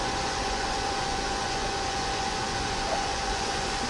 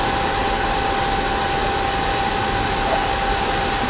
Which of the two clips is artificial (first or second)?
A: first